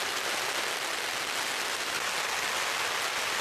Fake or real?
real